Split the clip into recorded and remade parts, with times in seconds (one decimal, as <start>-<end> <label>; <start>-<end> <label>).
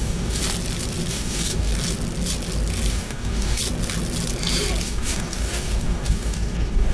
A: 0.0-0.4 remade; 0.4-1.1 recorded; 1.1-1.7 remade; 1.7-2.9 recorded; 2.9-3.6 remade; 3.6-4.8 recorded; 4.8-6.9 remade